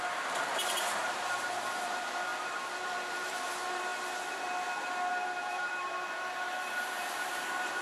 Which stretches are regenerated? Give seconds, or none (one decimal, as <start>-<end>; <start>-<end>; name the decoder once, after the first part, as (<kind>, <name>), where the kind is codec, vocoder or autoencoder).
0.0-3.9 (vocoder, BigVGAN v2); 5.1-7.8